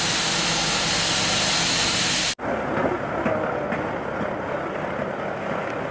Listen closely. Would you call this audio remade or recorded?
recorded